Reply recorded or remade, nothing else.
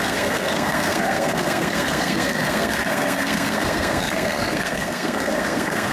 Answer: remade